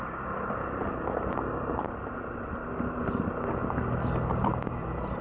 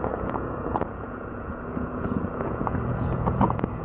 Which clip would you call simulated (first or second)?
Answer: second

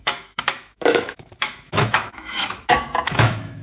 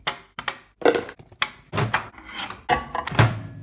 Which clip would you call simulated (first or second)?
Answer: first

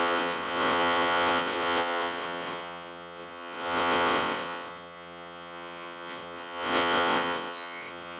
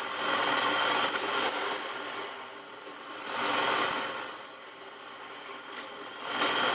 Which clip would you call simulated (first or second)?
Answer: first